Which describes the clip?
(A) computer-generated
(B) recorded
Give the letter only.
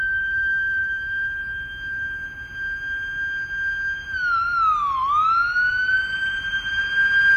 B